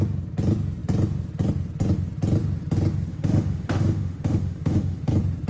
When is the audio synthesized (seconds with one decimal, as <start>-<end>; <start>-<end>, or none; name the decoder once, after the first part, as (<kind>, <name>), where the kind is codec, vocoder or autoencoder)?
3.1-5.1 (autoencoder, DAC-VAE)